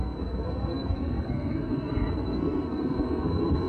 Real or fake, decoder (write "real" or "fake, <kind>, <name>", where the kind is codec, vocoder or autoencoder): fake, codec, SNAC